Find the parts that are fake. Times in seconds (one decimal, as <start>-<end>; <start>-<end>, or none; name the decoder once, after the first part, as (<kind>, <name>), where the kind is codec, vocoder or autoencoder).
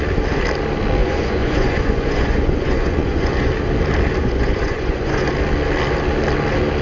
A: 1.0-3.5 (vocoder, Vocos); 4.2-5.3